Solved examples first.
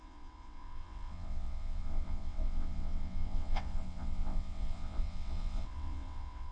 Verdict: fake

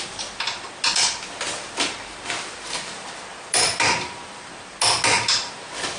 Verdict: real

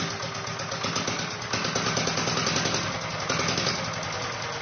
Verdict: real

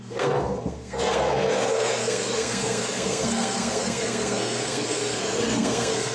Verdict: fake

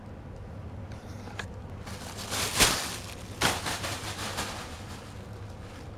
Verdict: real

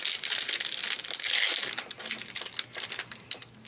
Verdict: real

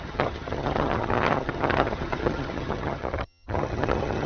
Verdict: fake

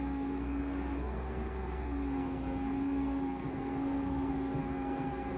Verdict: fake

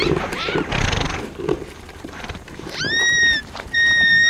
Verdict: fake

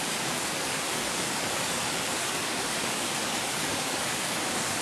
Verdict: fake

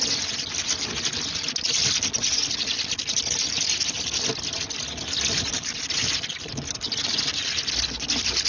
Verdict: real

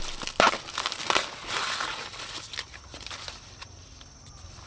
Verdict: real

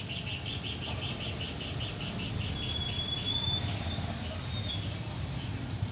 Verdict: real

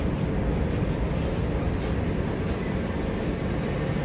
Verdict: real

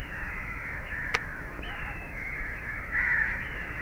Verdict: fake